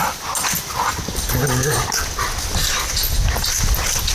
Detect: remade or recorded recorded